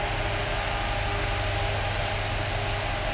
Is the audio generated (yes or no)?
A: no